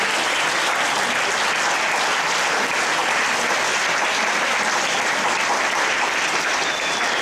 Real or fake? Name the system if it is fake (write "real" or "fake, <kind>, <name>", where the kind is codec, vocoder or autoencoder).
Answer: real